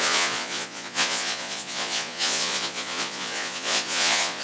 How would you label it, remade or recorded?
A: remade